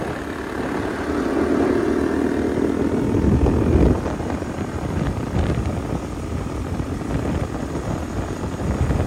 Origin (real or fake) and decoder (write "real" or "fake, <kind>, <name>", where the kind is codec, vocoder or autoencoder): real